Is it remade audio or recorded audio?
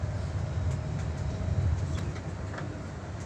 recorded